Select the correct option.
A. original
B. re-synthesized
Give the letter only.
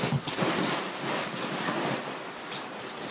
A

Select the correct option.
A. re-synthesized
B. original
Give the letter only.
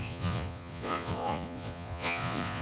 A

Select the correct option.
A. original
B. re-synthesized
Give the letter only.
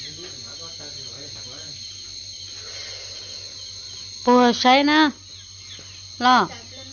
A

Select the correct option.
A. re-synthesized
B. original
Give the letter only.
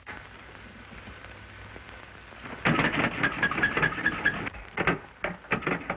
B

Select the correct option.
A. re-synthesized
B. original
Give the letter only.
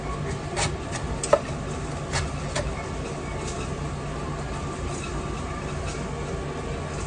B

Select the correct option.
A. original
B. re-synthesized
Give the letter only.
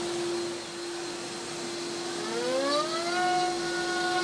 A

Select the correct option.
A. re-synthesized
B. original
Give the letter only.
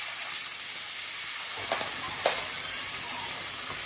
B